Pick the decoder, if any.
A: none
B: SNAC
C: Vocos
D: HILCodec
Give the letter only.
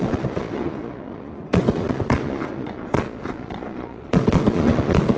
C